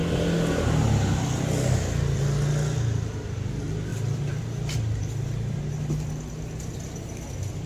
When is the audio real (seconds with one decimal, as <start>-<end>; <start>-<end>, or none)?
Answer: 0.0-7.7